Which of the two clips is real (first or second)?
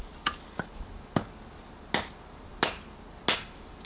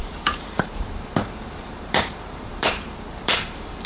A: first